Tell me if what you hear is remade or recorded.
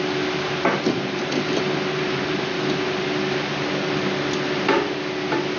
recorded